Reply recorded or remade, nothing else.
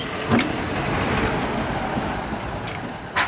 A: remade